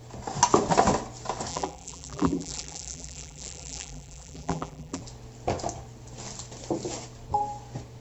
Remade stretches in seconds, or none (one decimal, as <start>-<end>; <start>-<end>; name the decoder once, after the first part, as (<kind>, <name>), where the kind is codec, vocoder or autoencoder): 1.5-5.0 (vocoder, BigVGAN v2)